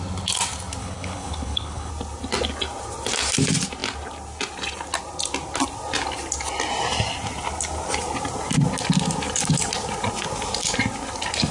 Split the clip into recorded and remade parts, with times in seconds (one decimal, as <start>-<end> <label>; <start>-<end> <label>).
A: 0.0-0.8 recorded; 0.8-1.9 remade; 1.9-11.5 recorded